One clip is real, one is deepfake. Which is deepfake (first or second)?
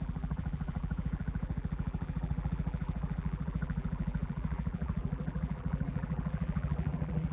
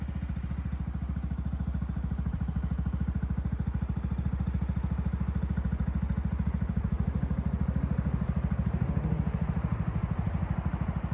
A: first